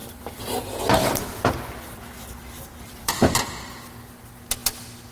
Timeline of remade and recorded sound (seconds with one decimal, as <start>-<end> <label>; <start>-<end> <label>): 0.0-3.1 remade; 3.1-5.1 recorded